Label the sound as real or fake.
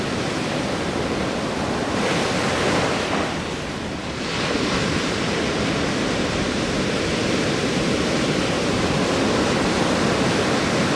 real